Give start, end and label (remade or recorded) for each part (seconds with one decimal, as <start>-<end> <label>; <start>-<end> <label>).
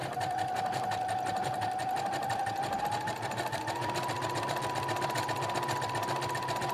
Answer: 0.0-2.8 remade; 2.8-6.7 recorded